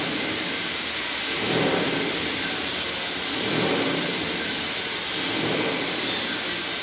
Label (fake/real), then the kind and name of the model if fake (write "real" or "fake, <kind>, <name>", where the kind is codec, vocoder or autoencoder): real